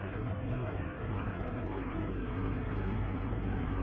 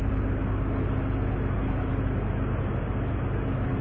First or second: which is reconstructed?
first